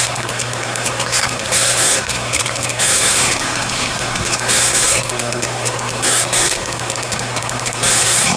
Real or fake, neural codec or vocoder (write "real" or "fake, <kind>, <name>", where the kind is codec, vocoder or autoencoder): fake, codec, SNAC